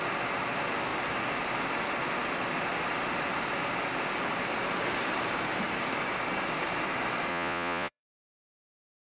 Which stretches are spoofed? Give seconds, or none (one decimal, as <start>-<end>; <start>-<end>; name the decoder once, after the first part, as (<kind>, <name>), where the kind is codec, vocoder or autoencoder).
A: 7.3-8.7 (vocoder, Vocos)